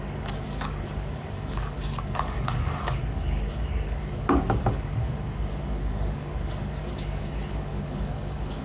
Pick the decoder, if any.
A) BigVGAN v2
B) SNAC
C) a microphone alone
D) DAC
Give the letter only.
D